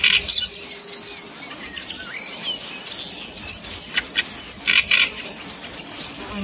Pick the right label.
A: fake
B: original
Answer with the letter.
B